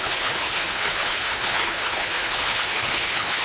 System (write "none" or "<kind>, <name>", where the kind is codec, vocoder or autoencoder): codec, HILCodec